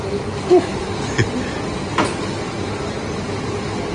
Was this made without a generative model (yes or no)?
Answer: yes